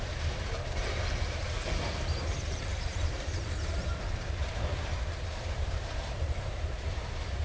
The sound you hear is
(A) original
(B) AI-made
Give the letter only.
B